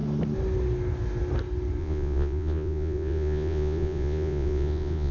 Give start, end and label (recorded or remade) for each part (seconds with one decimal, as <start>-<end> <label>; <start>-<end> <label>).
0.0-1.8 recorded; 1.8-5.1 remade